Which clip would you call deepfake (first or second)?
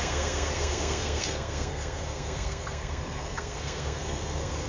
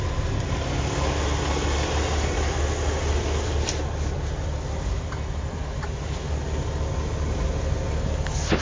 first